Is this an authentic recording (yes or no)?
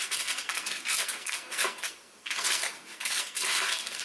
no